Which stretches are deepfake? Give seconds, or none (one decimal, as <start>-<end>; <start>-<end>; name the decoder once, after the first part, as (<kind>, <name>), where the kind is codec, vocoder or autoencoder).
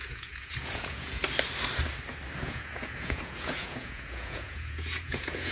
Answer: 0.0-1.2 (vocoder, Vocos); 2.4-5.5